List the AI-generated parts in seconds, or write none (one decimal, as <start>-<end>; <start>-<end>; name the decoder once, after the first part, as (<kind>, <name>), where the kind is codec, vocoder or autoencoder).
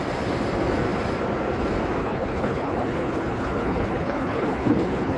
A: 2.0-5.2 (codec, HILCodec)